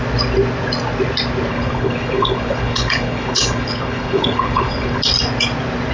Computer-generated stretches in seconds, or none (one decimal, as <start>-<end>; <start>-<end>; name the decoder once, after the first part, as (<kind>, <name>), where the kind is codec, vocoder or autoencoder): 1.5-5.0 (codec, HILCodec)